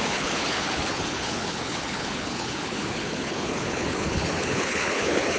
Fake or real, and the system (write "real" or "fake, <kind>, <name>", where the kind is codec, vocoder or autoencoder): fake, codec, HILCodec